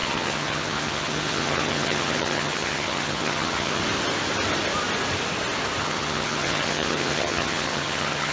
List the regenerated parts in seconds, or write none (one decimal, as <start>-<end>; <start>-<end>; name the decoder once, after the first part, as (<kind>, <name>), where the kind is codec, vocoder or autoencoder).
0.0-3.8 (vocoder, HiFi-GAN); 5.8-8.3